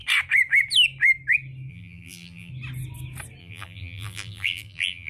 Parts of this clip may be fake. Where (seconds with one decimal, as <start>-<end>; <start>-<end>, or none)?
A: 1.7-2.5; 3.4-5.1